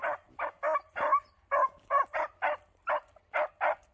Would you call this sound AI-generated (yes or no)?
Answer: no